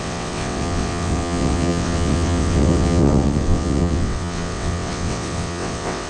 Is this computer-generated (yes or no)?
yes